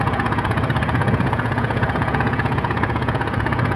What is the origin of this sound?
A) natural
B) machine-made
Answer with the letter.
B